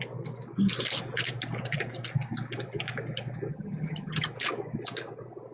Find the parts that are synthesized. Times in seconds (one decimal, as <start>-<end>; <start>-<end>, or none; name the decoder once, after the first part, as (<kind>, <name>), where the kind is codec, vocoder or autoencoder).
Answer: 3.5-4.3 (vocoder, HiFi-GAN)